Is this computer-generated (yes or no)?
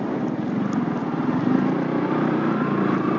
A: no